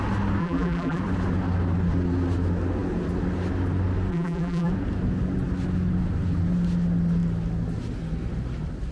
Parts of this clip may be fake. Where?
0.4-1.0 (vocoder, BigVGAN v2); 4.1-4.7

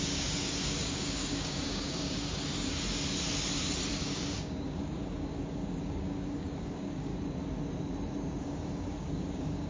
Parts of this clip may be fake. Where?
0.0-2.2 (codec, DAC); 4.0-7.1; 8.4-9.7

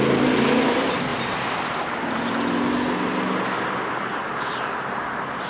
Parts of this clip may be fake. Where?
none

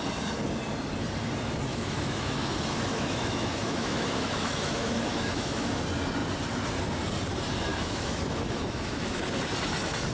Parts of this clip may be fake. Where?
1.7-5.8 (autoencoder, DAC-VAE); 7.7-9.2

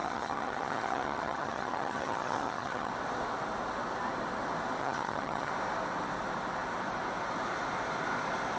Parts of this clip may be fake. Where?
0.0-2.9 (vocoder, HiFi-GAN); 4.8-5.5

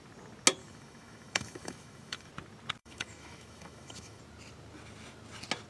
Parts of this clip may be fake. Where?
0.6-2.3 (autoencoder, DAC-VAE); 2.8-4.2

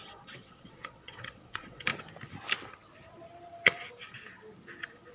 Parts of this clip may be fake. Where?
0.0-1.9 (vocoder, WaveNeXt)

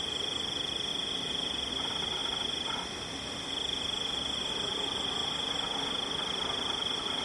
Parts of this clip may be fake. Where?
0.0-2.2 (vocoder, BigVGAN v2); 4.5-5.2; 6.1-7.2